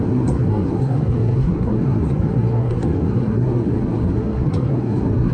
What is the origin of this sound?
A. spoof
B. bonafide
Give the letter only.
A